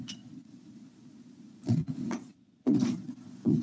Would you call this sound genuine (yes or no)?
no